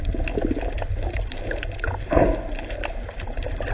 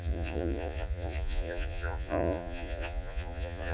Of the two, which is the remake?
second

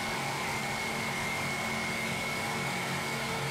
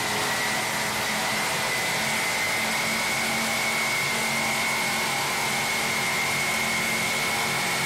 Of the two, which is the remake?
first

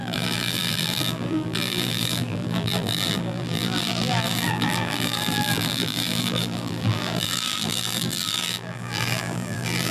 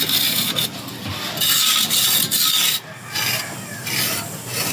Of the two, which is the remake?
first